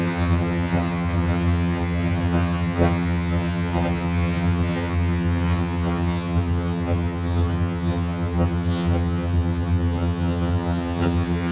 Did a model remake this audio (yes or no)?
yes